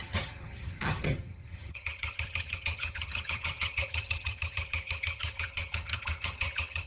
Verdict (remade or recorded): remade